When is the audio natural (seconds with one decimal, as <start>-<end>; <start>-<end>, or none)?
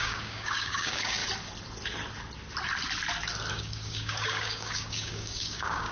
1.2-3.5